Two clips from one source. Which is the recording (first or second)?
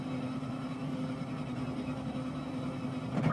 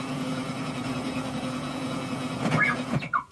first